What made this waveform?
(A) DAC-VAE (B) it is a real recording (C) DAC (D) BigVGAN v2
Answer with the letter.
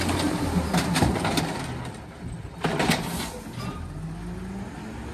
B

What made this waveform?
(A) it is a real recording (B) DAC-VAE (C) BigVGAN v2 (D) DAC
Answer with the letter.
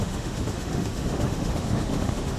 B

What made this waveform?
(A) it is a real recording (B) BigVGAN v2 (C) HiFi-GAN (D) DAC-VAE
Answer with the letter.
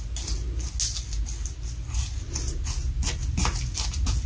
A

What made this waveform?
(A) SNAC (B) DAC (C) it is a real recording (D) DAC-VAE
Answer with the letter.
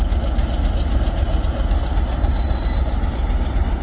C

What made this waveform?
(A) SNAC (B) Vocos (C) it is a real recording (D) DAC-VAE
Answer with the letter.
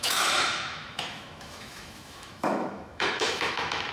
D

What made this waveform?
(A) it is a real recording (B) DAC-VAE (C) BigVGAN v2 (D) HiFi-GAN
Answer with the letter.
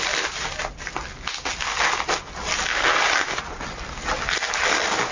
A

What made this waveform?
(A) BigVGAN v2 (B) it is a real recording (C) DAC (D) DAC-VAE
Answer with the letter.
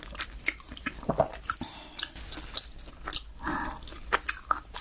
B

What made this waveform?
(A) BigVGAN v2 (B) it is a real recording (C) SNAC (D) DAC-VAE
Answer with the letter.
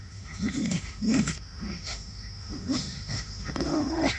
D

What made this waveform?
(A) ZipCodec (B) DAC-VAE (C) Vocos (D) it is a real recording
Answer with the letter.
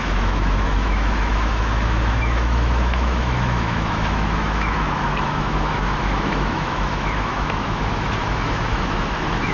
B